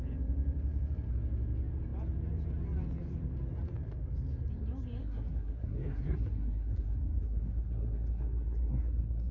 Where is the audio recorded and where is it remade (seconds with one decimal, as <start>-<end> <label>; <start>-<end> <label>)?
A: 0.0-5.0 recorded; 5.0-9.3 remade